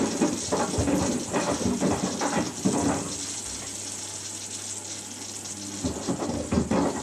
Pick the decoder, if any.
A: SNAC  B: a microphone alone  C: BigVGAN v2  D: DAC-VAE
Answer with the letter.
B